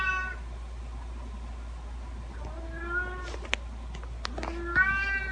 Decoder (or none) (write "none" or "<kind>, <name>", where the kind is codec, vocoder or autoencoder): none